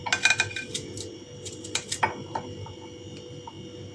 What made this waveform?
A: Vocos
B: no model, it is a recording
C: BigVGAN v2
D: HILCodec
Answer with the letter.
B